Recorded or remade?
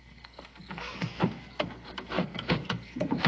remade